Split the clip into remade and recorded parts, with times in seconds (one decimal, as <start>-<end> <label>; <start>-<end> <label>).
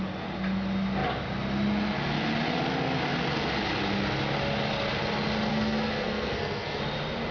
0.0-5.5 recorded; 5.5-6.8 remade; 6.8-7.3 recorded